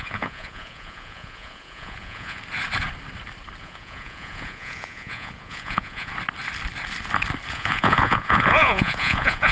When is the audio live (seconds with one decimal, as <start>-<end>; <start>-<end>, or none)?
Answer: 2.4-3.6; 6.1-7.5